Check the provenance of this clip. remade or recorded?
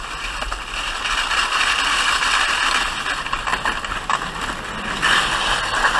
recorded